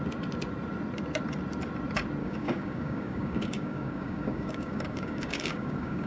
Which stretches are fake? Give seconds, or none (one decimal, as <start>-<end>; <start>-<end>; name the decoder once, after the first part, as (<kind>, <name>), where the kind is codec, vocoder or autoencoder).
2.2-6.1 (codec, DAC)